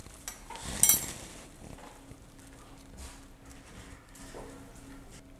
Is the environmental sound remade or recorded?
recorded